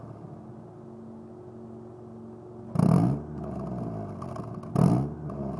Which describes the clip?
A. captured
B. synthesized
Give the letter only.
A